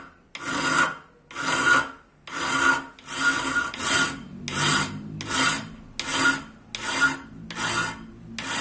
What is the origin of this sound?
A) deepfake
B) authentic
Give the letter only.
B